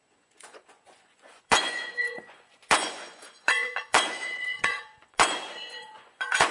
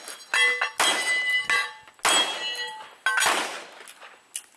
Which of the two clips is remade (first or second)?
first